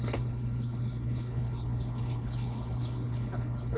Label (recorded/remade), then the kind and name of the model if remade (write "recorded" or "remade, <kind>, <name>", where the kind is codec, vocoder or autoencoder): remade, codec, HILCodec